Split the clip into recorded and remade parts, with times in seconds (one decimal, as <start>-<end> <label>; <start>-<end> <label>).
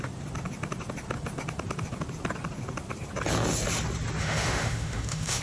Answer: 0.0-4.2 recorded; 4.2-5.4 remade